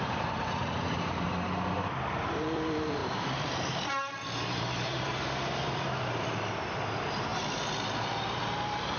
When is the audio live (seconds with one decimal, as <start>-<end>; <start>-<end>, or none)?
none